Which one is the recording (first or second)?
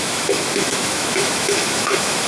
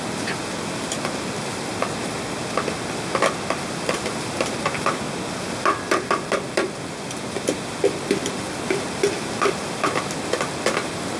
second